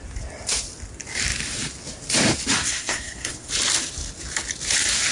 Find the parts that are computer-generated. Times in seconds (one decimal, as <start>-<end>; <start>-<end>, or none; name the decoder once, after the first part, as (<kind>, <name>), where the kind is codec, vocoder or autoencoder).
2.6-3.5 (codec, SNAC)